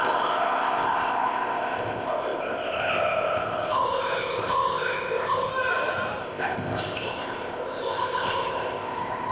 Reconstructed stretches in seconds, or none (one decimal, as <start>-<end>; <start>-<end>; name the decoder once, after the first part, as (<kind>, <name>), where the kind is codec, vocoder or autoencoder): 0.0-5.5 (codec, ZipCodec); 6.2-9.3